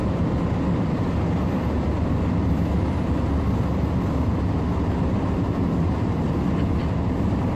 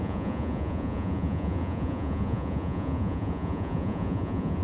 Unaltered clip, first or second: first